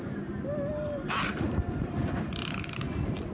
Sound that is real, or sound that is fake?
real